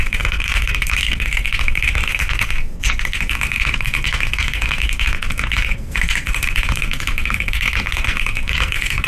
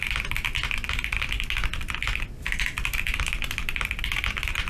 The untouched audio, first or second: second